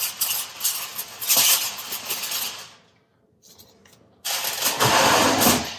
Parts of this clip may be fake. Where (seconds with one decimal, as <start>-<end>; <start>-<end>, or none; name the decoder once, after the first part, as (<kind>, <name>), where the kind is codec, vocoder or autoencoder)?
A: none